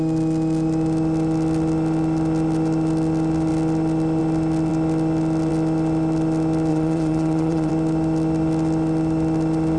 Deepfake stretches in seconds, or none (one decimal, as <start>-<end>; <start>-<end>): 6.7-7.7